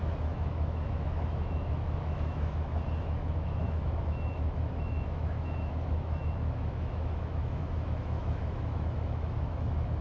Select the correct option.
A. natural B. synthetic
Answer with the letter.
B